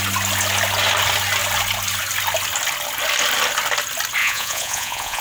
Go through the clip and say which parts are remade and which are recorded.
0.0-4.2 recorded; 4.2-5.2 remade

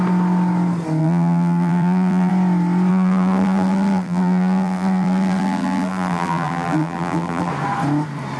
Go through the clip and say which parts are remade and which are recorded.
0.0-1.0 recorded; 1.0-2.3 remade; 2.3-2.9 recorded; 2.9-7.5 remade; 7.5-8.4 recorded

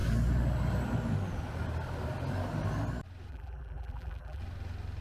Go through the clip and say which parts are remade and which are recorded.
0.0-3.3 recorded; 3.3-4.4 remade; 4.4-5.0 recorded

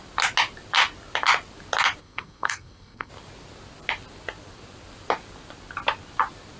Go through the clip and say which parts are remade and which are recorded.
0.0-2.0 recorded; 2.0-3.1 remade; 3.1-6.6 recorded

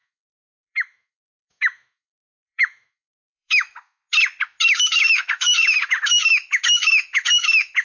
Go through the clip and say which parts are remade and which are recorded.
0.0-4.0 remade; 4.0-4.6 recorded; 4.6-7.8 remade

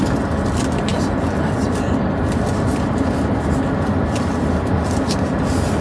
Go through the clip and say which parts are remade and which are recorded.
0.0-5.8 recorded

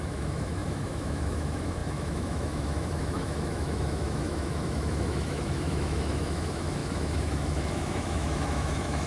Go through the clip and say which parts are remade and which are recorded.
0.0-9.1 remade

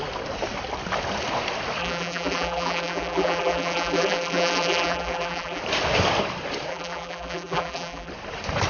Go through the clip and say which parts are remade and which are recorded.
0.0-1.8 recorded; 1.8-5.6 remade; 5.6-6.7 recorded; 6.7-8.1 remade; 8.1-8.7 recorded